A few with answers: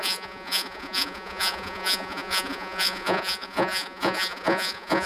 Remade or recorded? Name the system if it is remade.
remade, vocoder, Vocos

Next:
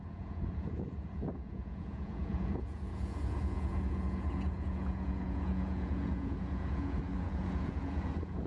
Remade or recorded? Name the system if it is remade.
remade, vocoder, Vocos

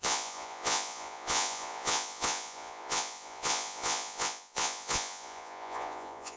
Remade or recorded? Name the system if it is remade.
remade, vocoder, Vocos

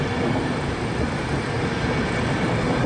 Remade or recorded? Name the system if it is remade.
recorded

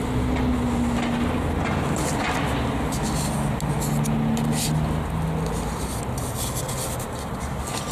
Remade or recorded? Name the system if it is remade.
recorded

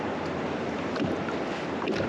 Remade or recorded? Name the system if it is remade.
recorded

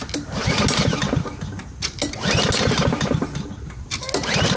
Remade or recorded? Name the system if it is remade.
recorded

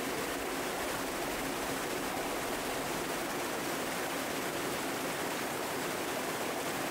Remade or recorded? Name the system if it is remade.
recorded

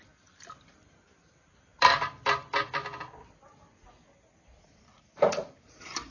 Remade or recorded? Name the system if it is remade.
recorded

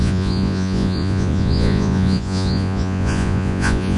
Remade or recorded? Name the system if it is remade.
remade, vocoder, Vocos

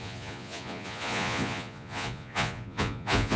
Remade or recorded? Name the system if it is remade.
remade, vocoder, Vocos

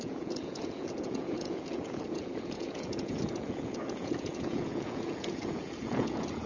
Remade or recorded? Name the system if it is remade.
remade, vocoder, Vocos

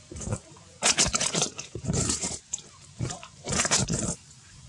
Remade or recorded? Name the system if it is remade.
remade, vocoder, Vocos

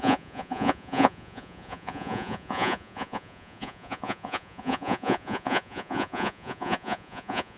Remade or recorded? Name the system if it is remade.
remade, vocoder, Vocos